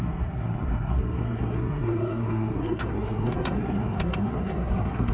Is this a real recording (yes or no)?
no